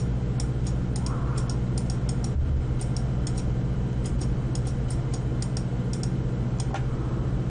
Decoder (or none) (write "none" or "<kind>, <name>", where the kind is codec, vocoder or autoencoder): none